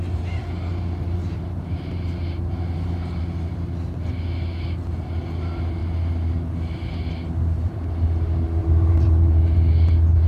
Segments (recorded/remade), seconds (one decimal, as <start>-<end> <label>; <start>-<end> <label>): 0.0-1.2 recorded; 1.2-3.2 remade; 3.2-8.6 recorded; 8.6-9.7 remade; 9.7-10.3 recorded